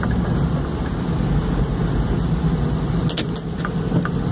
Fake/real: real